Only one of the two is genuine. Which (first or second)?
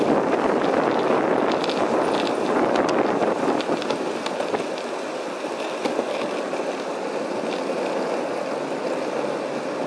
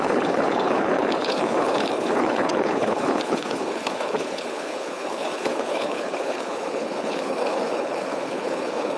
first